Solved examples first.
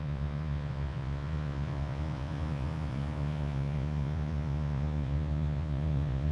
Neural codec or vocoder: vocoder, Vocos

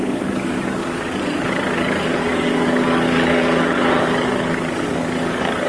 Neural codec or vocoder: codec, DAC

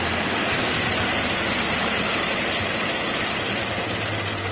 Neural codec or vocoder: none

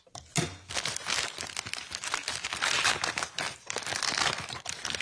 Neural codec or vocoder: none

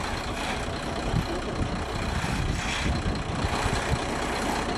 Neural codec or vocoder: none